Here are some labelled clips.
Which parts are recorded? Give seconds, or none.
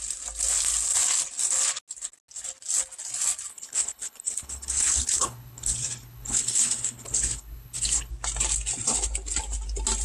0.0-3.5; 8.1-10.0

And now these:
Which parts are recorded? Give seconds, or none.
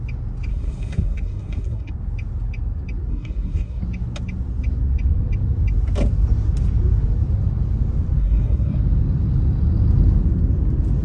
0.0-0.5; 1.9-3.1; 3.8-8.2; 8.8-11.0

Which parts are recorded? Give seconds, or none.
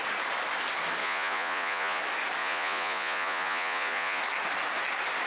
0.0-1.0; 2.0-2.4; 4.2-5.3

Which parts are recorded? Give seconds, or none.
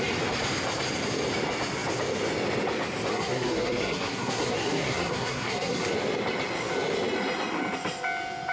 0.0-3.1; 5.9-8.5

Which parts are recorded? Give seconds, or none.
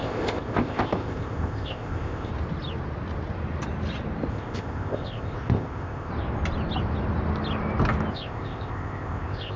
2.3-4.3; 6.1-8.1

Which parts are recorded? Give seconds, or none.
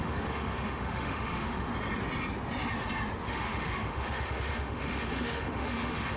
1.7-3.3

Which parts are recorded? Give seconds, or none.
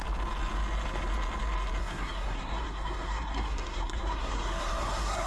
0.0-1.8